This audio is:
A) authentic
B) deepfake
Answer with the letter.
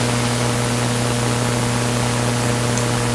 A